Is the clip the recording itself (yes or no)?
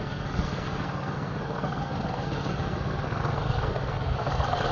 no